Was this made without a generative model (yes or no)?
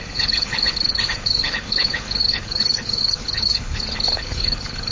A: no